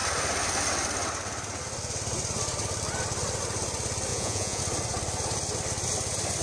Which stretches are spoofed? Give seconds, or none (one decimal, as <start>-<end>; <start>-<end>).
4.1-4.6